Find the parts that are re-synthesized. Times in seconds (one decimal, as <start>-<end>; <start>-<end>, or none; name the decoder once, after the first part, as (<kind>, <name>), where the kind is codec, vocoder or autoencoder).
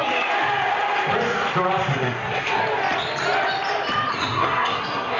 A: 1.9-2.6 (codec, SNAC); 4.1-5.2